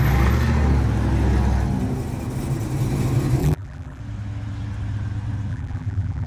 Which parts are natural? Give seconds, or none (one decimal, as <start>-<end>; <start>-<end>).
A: 0.0-3.4; 4.0-5.5